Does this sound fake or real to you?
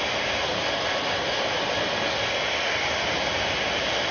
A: real